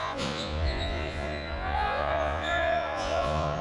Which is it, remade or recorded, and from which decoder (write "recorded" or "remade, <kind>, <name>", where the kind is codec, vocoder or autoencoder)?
remade, vocoder, Vocos